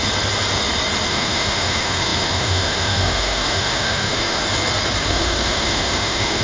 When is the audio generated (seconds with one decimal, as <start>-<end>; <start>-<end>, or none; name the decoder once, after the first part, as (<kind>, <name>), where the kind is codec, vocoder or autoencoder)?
1.1-4.4 (autoencoder, DAC-VAE); 5.1-6.4